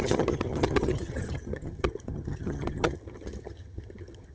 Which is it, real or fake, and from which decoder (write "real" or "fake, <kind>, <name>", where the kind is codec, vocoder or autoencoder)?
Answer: fake, vocoder, HiFi-GAN